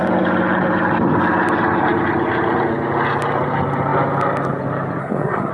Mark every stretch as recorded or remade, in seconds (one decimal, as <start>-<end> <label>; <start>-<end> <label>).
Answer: 0.0-5.0 recorded; 5.0-5.5 remade